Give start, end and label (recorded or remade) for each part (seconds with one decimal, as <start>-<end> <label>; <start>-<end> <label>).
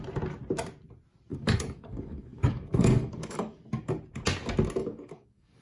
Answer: 0.0-1.3 recorded; 1.3-3.6 remade; 3.6-4.8 recorded; 4.8-5.6 remade